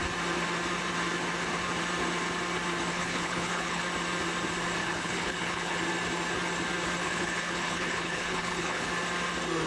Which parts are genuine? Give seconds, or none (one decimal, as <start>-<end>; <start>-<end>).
0.0-2.9; 3.8-4.8; 5.8-7.0; 8.9-9.7